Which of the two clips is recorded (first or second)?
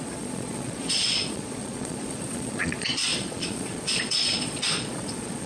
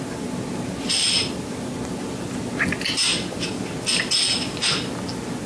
second